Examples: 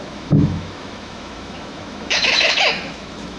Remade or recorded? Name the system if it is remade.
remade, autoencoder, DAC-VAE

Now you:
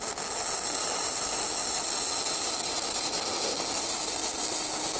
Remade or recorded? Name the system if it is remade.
recorded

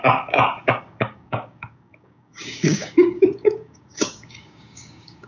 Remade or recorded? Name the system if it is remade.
remade, codec, DAC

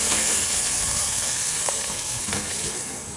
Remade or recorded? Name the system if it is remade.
remade, codec, SNAC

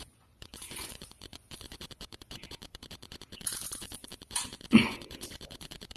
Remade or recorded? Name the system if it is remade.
remade, vocoder, Vocos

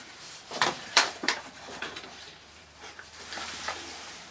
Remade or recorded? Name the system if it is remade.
remade, vocoder, BigVGAN v2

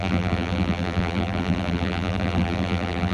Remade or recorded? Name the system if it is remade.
remade, vocoder, BigVGAN v2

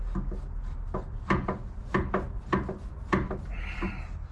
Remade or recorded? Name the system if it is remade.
recorded